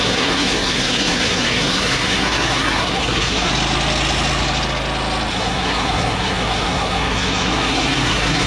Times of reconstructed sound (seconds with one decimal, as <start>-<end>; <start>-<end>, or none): 0.0-3.5; 5.3-8.5